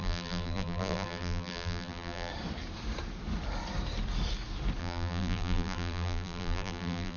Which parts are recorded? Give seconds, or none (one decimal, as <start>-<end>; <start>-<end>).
2.3-4.8